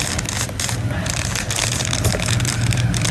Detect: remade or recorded recorded